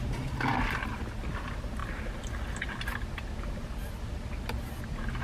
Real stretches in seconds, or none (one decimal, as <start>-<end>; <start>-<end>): 0.0-5.2